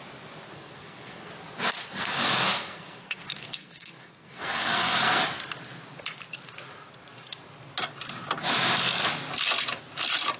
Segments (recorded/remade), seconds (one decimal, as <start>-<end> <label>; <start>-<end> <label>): 0.0-0.5 recorded; 0.5-1.3 remade; 1.3-1.9 recorded; 1.9-5.2 remade; 5.2-10.4 recorded